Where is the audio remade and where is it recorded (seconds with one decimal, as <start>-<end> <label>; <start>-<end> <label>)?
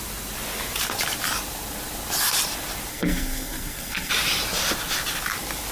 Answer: 0.0-2.9 recorded; 2.9-4.1 remade; 4.1-5.7 recorded